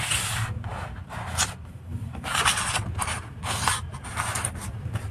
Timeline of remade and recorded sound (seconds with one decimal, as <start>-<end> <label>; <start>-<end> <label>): 0.0-1.9 recorded; 1.9-5.1 remade